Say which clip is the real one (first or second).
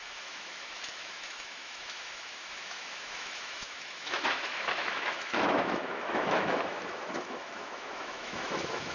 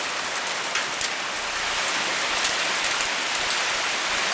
second